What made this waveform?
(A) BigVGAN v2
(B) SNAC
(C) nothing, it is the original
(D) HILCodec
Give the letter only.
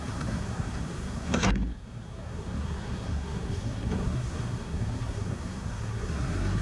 B